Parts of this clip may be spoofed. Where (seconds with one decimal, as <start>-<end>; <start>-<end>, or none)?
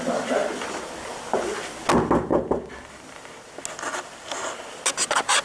none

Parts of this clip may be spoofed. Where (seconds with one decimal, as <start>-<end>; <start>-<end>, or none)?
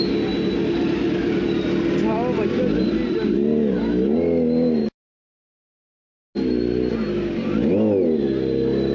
4.8-5.5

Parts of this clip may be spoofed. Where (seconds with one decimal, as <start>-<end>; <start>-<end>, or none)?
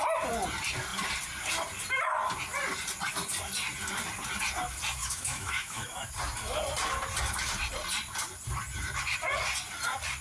5.0-6.1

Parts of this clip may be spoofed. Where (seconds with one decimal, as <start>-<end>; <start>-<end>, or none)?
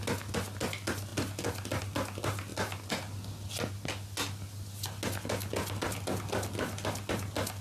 none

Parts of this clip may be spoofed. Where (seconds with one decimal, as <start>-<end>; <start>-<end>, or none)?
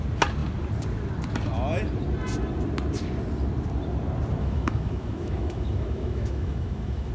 4.4-7.1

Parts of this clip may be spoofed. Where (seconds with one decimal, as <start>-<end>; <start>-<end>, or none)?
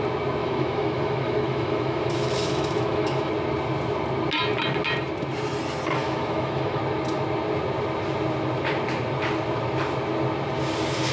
0.4-3.3; 6.0-6.8